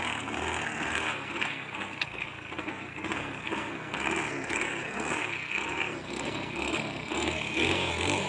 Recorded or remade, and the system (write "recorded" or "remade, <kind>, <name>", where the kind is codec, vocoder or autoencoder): remade, codec, SNAC